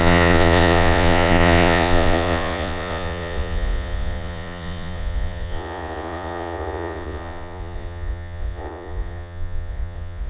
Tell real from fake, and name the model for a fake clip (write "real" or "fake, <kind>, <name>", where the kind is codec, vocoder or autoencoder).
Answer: fake, vocoder, Vocos